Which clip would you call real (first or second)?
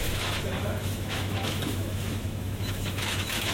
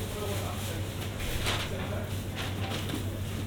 second